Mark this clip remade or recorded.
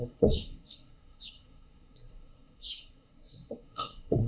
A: remade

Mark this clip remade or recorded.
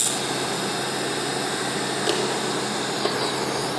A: recorded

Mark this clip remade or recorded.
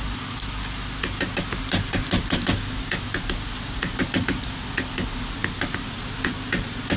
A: recorded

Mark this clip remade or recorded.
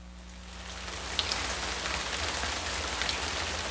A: recorded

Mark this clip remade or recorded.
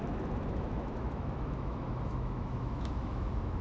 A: remade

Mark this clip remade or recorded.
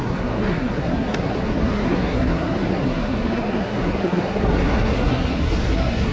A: remade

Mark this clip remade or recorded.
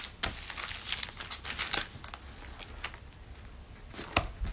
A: recorded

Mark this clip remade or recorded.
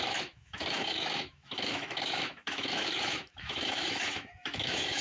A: remade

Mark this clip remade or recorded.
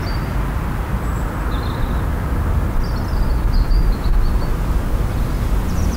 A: recorded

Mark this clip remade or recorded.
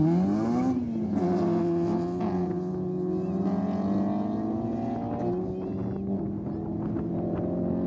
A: recorded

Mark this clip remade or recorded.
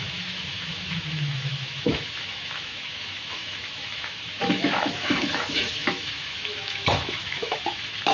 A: remade